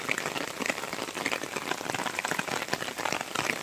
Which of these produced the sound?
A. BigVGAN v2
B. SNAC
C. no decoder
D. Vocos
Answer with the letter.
C